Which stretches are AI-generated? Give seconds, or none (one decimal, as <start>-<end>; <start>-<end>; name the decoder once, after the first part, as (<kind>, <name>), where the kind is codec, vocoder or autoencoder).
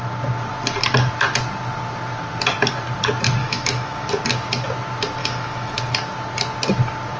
3.4-4.1 (autoencoder, DAC-VAE); 5.2-5.8